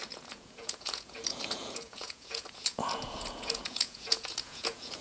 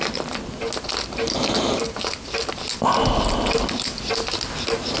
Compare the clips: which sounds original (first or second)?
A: second